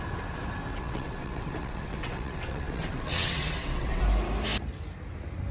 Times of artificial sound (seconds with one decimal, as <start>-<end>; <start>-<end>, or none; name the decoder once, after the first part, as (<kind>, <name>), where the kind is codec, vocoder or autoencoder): 0.7-4.0 (vocoder, WaveNeXt)